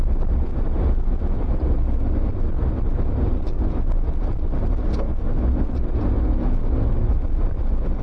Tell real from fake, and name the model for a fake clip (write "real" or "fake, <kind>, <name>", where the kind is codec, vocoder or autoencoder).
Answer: real